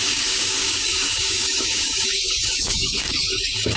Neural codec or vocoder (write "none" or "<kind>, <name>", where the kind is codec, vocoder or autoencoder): codec, DAC